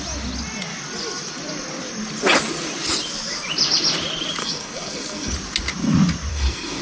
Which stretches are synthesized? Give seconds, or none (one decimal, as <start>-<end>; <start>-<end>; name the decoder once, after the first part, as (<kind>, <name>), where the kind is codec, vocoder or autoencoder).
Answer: 4.4-5.3 (codec, SNAC); 6.3-6.8